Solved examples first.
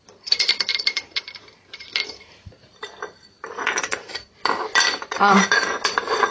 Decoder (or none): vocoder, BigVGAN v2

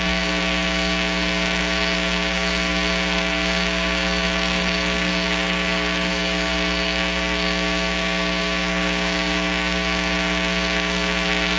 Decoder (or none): codec, DAC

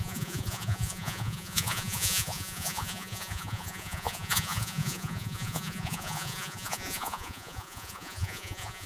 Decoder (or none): vocoder, Vocos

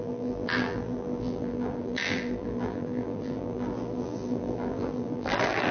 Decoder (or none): vocoder, BigVGAN v2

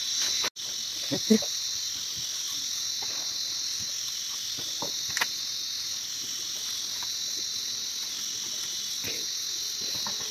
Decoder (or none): none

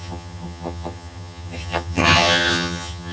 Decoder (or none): vocoder, HiFi-GAN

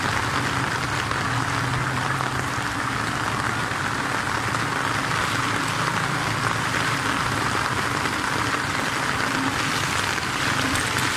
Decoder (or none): none